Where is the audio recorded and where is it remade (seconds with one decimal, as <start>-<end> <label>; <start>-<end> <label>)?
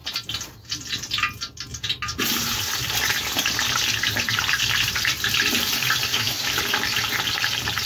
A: 0.0-6.1 recorded; 6.1-6.6 remade; 6.6-7.9 recorded